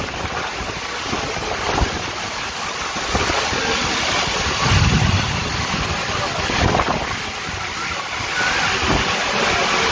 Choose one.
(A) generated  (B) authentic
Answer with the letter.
B